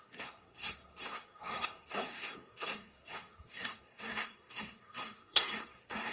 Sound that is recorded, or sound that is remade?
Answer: remade